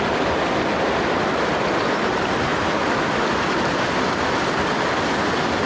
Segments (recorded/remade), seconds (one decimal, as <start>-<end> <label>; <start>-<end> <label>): 0.0-5.7 recorded